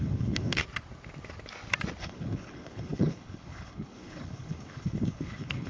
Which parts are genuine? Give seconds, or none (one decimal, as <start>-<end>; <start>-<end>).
0.6-2.0